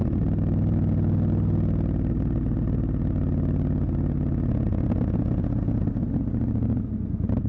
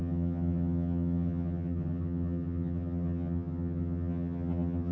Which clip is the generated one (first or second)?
second